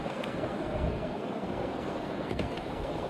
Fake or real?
fake